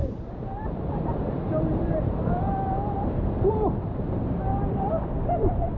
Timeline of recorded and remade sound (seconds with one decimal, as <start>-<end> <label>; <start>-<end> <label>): 0.0-4.5 remade; 4.5-5.2 recorded; 5.2-5.8 remade